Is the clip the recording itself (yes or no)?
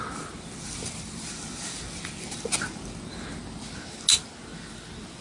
yes